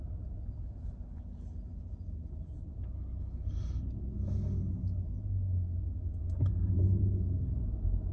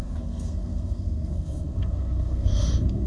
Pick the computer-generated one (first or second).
second